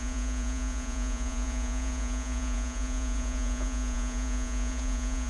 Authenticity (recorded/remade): remade